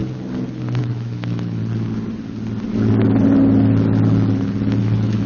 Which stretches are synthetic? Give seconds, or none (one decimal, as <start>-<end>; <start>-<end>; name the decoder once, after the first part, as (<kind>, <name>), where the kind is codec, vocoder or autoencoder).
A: 0.8-1.6 (autoencoder, DAC-VAE); 4.8-5.3